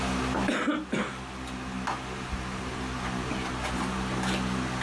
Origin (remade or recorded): recorded